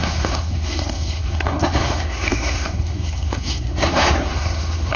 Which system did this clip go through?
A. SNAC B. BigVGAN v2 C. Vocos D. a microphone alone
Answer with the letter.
A